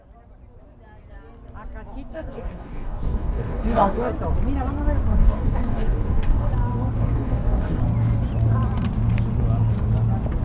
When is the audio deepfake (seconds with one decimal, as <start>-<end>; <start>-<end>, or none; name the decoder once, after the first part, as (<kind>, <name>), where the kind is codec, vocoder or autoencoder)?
2.1-4.1 (codec, DAC); 5.1-6.5; 7.0-7.8